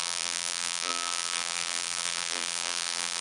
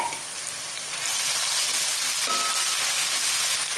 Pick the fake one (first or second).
first